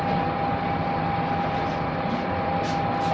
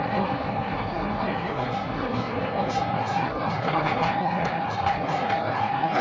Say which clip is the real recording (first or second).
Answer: first